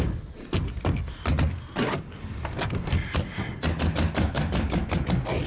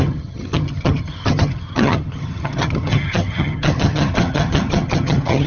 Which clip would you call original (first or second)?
first